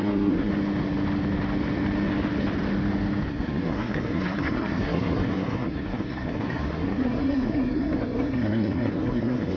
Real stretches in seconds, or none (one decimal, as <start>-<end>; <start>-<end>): 0.5-3.3